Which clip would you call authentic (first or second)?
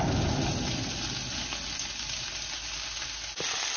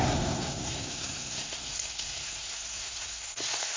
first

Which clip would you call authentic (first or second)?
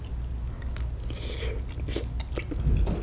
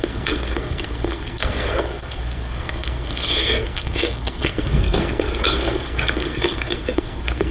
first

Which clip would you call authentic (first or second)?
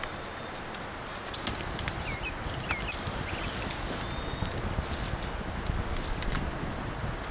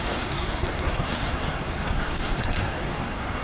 first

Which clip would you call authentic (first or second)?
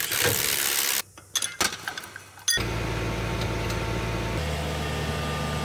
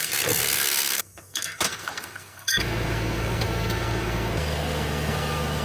first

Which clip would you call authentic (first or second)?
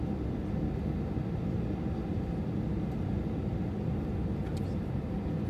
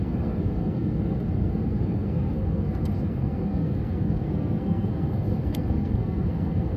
first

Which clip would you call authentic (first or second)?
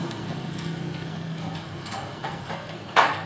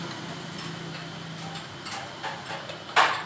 second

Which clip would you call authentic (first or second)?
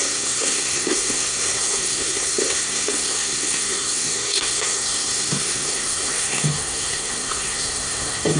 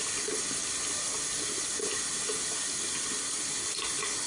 second